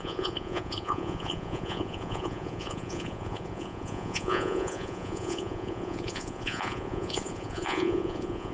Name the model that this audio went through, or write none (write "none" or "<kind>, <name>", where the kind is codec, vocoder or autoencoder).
vocoder, Vocos